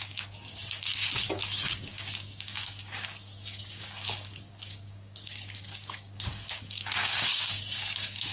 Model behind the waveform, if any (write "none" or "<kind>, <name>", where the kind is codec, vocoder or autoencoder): codec, DAC